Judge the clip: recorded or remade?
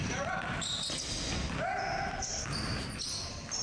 recorded